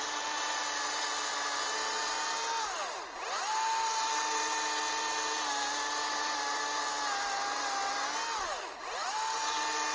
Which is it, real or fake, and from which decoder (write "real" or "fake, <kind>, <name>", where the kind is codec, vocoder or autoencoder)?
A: real